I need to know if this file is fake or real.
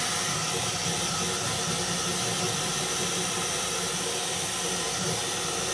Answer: real